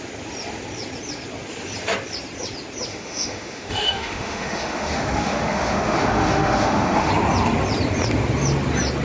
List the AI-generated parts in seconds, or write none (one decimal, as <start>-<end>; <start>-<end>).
2.9-7.1